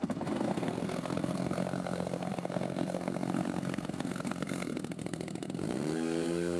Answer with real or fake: fake